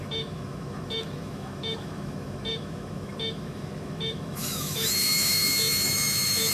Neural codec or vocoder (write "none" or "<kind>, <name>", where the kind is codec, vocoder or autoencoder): autoencoder, DAC-VAE